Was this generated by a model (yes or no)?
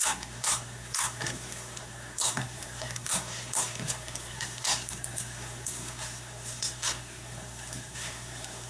yes